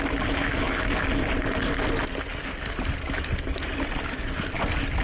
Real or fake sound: real